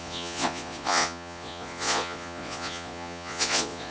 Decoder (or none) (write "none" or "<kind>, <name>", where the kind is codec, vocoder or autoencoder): vocoder, Vocos